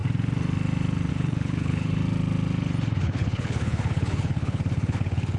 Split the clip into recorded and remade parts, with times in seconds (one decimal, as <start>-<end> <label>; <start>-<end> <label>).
0.0-1.1 recorded; 1.1-2.0 remade; 2.0-3.0 recorded; 3.0-5.4 remade